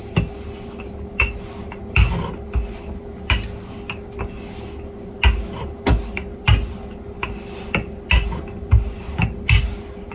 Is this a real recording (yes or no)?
yes